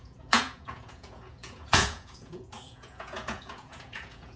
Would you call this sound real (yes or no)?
no